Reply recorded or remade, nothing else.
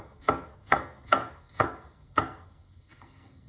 remade